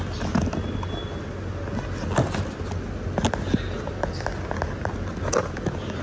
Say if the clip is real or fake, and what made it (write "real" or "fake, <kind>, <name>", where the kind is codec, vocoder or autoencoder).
real